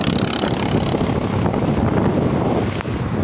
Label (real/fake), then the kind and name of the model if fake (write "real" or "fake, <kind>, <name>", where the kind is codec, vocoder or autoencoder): real